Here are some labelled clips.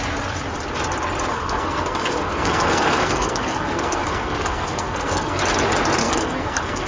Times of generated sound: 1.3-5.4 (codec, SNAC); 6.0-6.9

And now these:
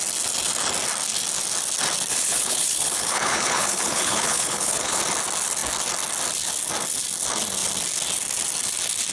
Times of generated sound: 2.1-5.0 (codec, HILCodec)

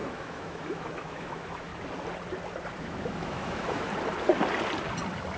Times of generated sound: 0.0-1.7 (autoencoder, DAC-VAE); 2.8-3.9

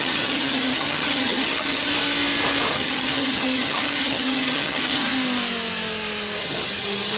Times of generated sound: 0.0-1.9 (vocoder, HiFi-GAN); 2.7-5.1; 6.4-7.2